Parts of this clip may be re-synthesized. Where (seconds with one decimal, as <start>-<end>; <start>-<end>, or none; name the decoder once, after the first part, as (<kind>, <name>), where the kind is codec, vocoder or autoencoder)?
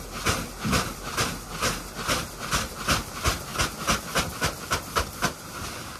none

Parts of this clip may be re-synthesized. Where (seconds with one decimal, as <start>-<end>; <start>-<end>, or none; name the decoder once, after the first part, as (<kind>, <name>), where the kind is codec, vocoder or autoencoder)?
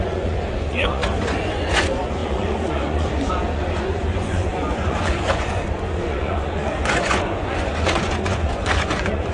0.0-9.3 (vocoder, Vocos)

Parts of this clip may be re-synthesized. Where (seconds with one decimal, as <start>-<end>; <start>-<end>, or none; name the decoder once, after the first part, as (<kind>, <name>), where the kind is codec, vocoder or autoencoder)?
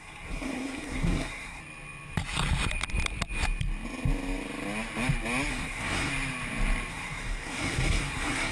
0.0-1.6 (codec, SNAC); 5.5-6.1; 6.9-8.5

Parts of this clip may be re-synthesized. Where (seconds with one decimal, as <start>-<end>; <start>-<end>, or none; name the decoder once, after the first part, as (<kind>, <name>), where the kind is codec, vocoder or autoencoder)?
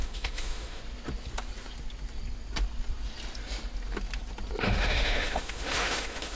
0.0-0.8 (autoencoder, DAC-VAE); 4.6-6.4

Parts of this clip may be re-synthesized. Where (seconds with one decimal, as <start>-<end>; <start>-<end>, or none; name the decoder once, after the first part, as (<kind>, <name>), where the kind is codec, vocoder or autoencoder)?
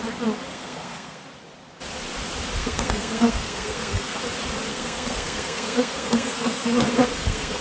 0.5-1.2 (codec, SNAC); 2.6-4.2; 4.7-7.6